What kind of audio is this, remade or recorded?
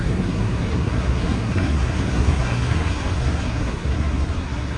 remade